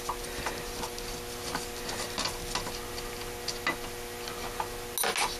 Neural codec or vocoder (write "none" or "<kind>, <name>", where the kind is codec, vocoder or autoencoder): none